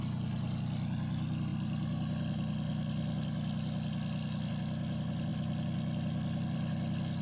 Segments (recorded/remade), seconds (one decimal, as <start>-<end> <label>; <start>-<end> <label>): 0.0-7.2 recorded